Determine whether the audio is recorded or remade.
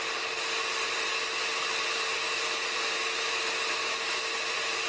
recorded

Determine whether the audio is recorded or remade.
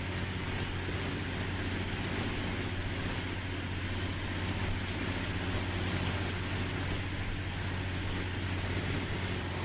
recorded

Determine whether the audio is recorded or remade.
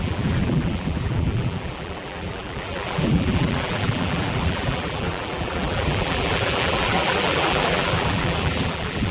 remade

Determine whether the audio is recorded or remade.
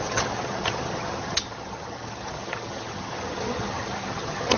remade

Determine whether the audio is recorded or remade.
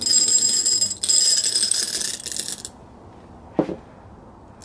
recorded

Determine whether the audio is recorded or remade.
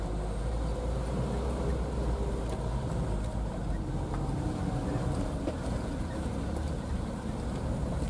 remade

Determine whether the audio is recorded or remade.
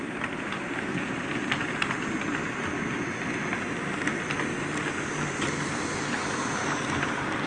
recorded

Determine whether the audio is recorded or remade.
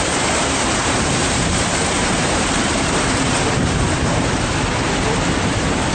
remade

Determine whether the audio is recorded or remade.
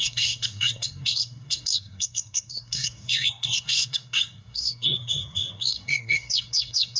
remade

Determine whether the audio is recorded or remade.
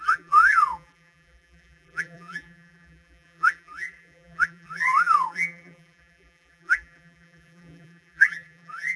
remade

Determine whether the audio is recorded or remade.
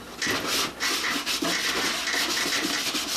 recorded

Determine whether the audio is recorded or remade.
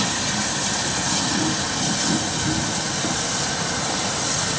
recorded